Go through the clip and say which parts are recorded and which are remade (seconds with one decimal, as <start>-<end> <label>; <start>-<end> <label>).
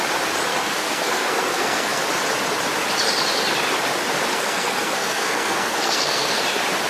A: 0.0-0.5 recorded; 0.5-2.0 remade; 2.0-4.3 recorded; 4.3-6.4 remade; 6.4-6.9 recorded